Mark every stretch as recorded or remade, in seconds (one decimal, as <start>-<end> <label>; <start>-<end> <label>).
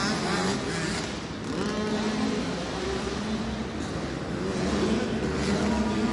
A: 0.0-6.1 recorded